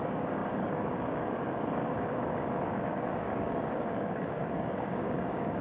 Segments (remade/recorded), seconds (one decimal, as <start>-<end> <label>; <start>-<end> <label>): 0.0-5.6 remade